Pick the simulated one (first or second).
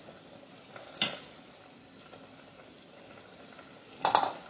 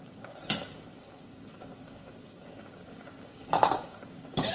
second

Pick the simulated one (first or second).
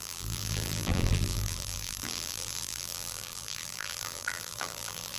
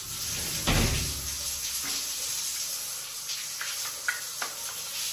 first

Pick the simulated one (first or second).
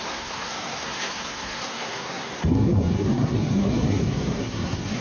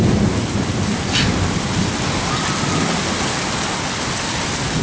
first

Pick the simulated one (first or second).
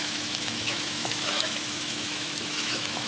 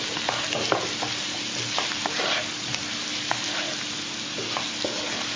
first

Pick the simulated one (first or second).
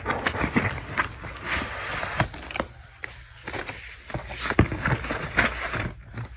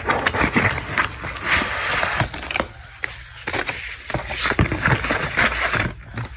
second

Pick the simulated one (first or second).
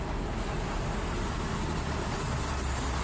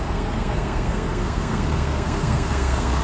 second